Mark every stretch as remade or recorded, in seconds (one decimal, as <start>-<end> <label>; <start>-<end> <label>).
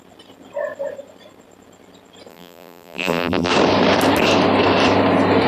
0.0-2.3 recorded; 2.3-3.5 remade; 3.5-5.5 recorded